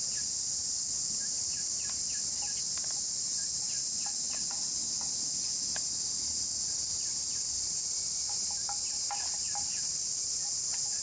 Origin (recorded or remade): recorded